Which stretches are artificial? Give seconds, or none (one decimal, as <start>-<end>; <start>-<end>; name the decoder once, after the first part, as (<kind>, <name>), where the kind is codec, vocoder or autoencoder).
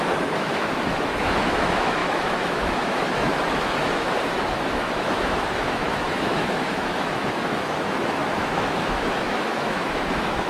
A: 0.0-10.5 (autoencoder, DAC-VAE)